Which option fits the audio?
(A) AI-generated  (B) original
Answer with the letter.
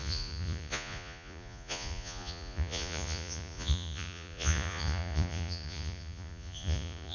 A